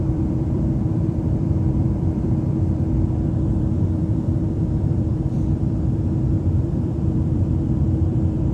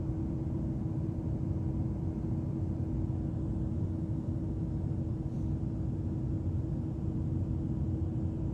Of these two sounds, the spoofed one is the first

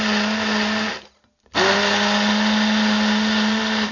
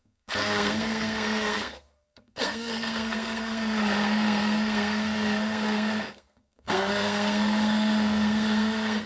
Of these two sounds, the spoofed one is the second